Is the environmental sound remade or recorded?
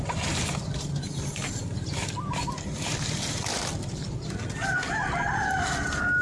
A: recorded